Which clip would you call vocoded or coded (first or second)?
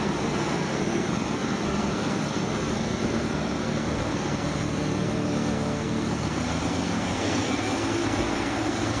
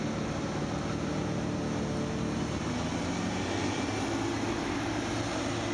first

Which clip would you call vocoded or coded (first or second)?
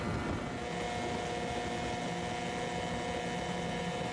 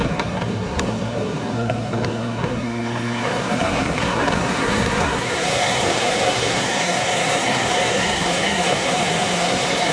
second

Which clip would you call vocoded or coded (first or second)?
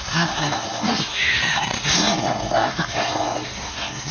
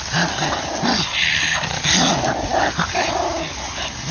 first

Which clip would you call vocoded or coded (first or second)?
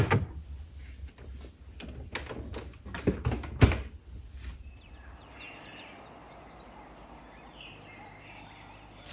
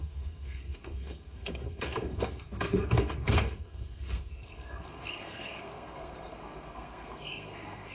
second